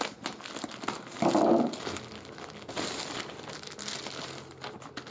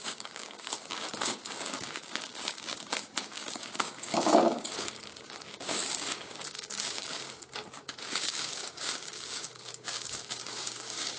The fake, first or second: second